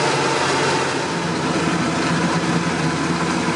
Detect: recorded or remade recorded